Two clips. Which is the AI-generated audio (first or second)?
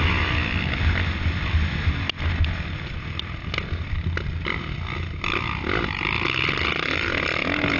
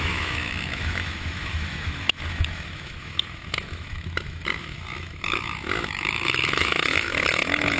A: second